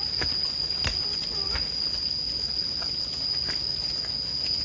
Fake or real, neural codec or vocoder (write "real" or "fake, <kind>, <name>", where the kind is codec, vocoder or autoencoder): real